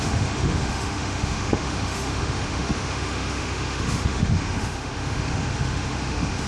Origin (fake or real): fake